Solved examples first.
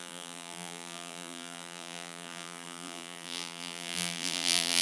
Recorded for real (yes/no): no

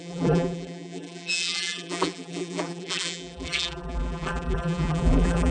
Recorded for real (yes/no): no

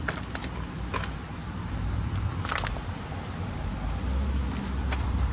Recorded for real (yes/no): no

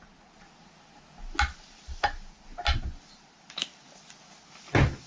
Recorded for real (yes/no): yes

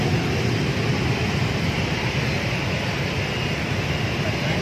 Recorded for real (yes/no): yes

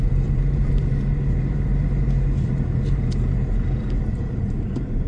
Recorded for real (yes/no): no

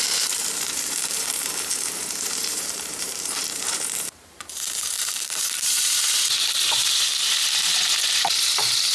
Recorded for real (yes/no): no